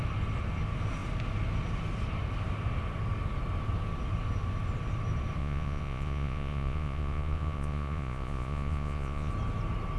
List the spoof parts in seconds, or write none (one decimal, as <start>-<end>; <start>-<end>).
5.4-9.3